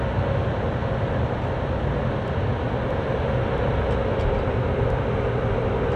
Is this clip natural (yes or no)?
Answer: yes